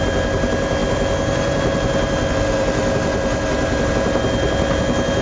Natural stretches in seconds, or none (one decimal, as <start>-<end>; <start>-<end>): 0.0-0.8; 3.9-5.2